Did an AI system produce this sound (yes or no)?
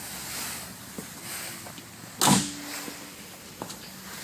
no